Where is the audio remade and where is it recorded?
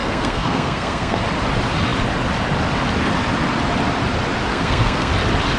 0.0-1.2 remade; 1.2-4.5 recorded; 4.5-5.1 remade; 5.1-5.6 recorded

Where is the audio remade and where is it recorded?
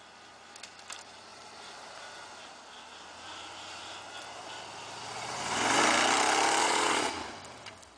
0.0-6.6 recorded; 6.6-7.1 remade; 7.1-8.0 recorded